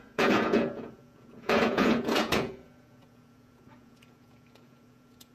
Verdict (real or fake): fake